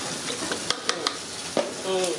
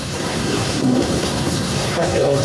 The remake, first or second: second